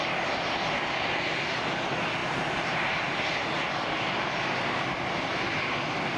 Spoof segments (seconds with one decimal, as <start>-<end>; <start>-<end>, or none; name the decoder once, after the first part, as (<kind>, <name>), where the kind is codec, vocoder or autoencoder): 2.2-3.6 (vocoder, BigVGAN v2)

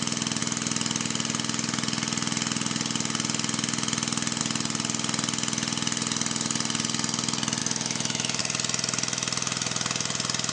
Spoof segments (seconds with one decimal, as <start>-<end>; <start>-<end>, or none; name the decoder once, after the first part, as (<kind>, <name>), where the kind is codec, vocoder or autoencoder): 7.6-8.4 (autoencoder, DAC-VAE)

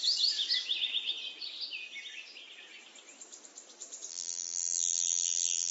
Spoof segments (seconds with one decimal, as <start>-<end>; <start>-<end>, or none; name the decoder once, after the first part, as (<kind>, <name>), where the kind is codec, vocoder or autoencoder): 4.1-5.7 (vocoder, BigVGAN v2)

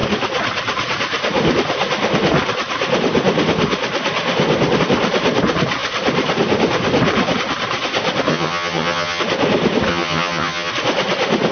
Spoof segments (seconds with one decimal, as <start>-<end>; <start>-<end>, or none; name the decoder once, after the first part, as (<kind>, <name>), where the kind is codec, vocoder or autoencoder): 8.3-9.2 (vocoder, HiFi-GAN); 9.9-10.7

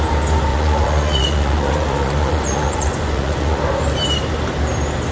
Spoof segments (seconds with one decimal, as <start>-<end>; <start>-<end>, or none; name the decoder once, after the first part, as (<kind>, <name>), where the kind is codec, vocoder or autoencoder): 0.5-3.6 (vocoder, Vocos)

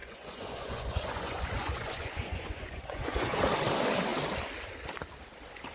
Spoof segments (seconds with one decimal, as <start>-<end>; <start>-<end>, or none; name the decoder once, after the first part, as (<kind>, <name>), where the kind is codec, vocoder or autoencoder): 0.0-3.4 (vocoder, Vocos)